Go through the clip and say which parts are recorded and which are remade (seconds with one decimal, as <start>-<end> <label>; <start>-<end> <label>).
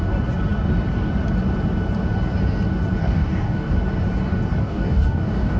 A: 0.0-3.0 recorded; 3.0-3.7 remade; 3.7-4.6 recorded; 4.6-5.6 remade